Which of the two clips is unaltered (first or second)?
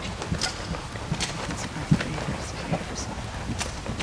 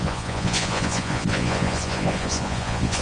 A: first